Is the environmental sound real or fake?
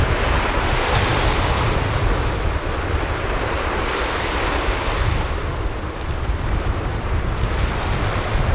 real